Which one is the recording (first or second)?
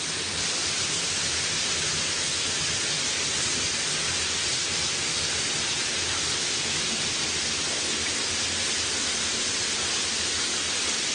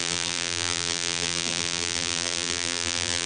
first